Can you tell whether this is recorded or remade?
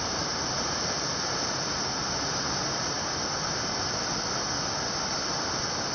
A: recorded